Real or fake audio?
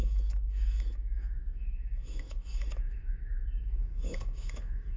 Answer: fake